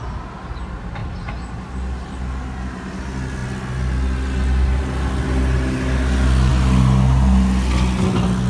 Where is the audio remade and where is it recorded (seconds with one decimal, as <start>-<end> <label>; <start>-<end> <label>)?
0.0-8.5 recorded